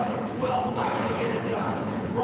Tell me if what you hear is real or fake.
fake